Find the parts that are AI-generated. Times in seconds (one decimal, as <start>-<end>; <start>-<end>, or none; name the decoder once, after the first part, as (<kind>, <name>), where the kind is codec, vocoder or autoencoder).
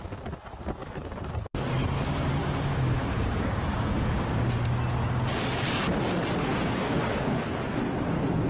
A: 2.4-4.5 (codec, DAC); 6.5-7.3